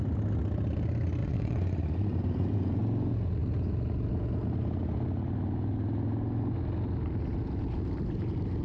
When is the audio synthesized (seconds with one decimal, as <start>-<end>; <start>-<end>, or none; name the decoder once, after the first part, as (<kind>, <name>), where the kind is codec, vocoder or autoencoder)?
1.2-2.8 (vocoder, Vocos)